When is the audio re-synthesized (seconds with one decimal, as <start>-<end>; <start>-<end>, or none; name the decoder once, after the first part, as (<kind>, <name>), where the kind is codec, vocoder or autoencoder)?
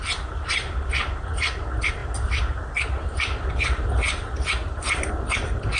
2.0-5.1 (vocoder, BigVGAN v2)